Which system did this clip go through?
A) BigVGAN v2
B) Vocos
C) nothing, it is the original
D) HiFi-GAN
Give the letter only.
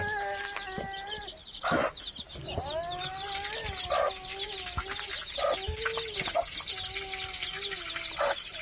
C